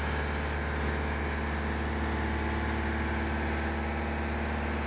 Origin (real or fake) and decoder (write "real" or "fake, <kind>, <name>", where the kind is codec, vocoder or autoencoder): real